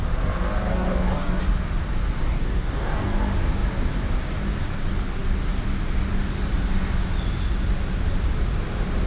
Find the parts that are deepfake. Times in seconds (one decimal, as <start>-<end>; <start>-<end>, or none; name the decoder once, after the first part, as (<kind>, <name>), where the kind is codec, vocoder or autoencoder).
0.7-1.4 (codec, DAC); 2.2-3.2